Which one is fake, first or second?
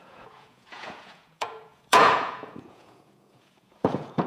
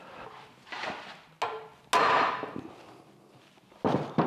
first